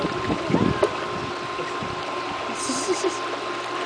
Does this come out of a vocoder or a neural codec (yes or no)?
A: no